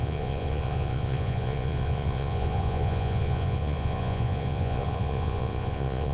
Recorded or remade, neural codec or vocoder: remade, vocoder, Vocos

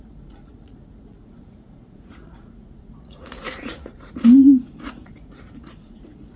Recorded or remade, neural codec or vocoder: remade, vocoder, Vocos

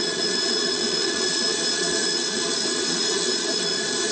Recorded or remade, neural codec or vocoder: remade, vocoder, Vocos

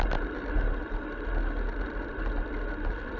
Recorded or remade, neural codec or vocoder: recorded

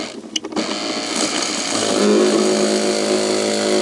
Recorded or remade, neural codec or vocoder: recorded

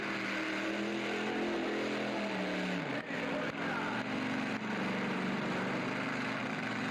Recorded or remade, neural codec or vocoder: recorded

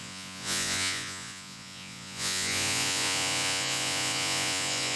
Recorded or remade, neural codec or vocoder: remade, vocoder, Vocos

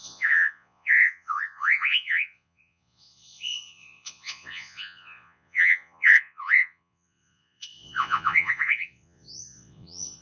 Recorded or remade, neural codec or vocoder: remade, vocoder, Vocos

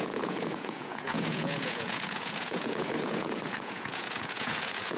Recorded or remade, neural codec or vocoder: remade, vocoder, Vocos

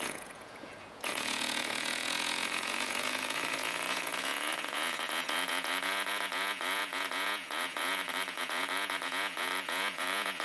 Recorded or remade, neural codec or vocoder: remade, vocoder, Vocos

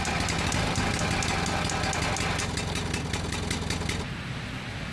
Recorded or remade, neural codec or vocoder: recorded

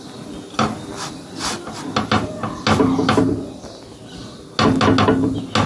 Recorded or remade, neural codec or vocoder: recorded